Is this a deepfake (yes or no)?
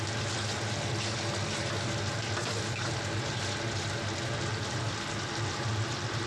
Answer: no